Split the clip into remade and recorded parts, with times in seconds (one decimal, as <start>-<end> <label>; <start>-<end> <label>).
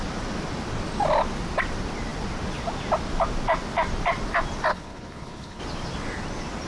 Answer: 0.0-4.7 recorded; 4.7-5.6 remade; 5.6-6.7 recorded